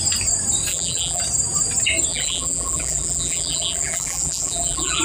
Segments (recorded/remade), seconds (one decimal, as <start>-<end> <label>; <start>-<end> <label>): 0.0-0.7 recorded; 0.7-1.2 remade; 1.2-2.1 recorded; 2.1-5.0 remade